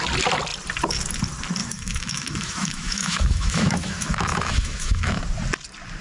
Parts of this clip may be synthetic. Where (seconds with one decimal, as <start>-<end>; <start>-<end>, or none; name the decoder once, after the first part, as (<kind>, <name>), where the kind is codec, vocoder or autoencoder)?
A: 1.6-5.2 (autoencoder, DAC-VAE)